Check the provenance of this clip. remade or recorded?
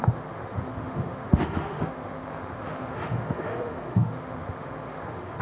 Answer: remade